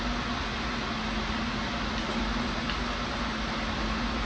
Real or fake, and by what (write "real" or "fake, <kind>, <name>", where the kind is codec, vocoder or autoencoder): real